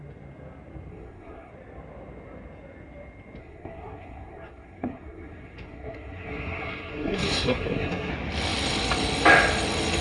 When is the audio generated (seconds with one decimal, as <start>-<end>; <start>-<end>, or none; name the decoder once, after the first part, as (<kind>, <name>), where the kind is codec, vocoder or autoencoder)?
0.9-1.5 (codec, SNAC); 3.4-8.1